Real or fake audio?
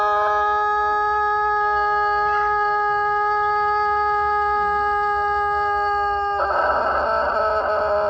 real